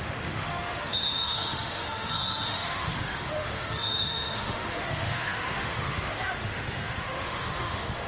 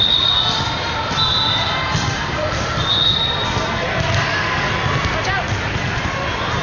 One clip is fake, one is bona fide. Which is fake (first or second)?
first